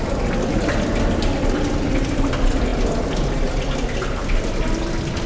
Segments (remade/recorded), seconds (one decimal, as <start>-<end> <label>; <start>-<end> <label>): 0.0-5.3 recorded